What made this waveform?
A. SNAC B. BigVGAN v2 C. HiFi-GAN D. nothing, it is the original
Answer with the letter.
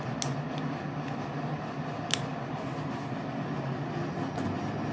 D